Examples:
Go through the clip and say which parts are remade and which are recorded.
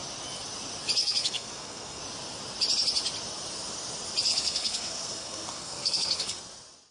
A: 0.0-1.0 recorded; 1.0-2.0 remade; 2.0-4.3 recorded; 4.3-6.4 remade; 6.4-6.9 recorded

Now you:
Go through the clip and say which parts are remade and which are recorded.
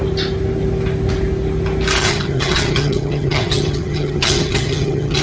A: 0.0-2.0 recorded; 2.0-5.2 remade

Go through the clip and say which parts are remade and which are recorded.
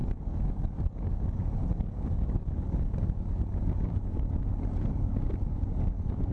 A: 0.0-6.3 remade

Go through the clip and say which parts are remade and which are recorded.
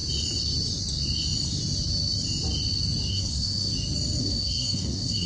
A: 0.0-3.1 recorded; 3.1-3.7 remade; 3.7-4.2 recorded; 4.2-5.3 remade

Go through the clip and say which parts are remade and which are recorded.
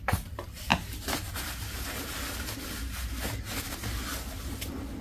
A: 0.0-5.0 recorded